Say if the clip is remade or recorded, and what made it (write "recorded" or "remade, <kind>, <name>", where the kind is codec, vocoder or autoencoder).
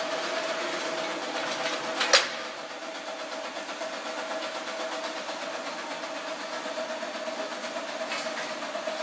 recorded